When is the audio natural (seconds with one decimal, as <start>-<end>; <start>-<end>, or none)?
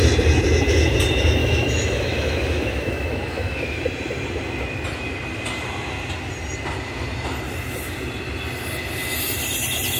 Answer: 0.0-1.4; 3.8-10.0